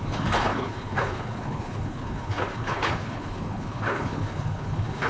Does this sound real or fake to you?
fake